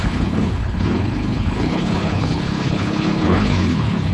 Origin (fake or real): fake